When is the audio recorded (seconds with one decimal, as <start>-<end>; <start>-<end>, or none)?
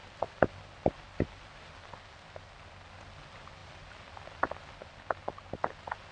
0.6-3.6; 4.2-6.1